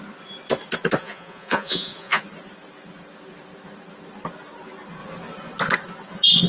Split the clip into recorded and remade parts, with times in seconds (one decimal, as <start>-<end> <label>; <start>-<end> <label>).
0.0-1.0 recorded; 1.0-2.2 remade; 2.2-6.5 recorded